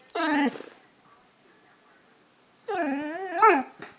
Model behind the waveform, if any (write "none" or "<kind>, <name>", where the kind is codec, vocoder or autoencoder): none